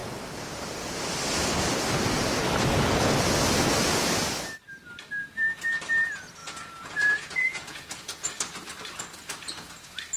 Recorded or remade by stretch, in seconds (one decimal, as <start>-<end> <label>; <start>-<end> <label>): 0.0-6.4 recorded; 6.4-8.3 remade; 8.3-10.2 recorded